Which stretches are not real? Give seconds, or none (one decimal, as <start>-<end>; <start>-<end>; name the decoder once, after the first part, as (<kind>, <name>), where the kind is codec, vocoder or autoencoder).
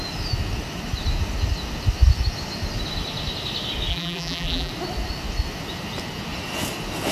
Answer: 3.9-4.7 (vocoder, BigVGAN v2)